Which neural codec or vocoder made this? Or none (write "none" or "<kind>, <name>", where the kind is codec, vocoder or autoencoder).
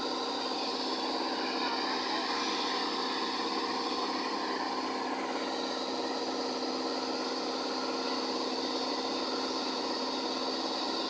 none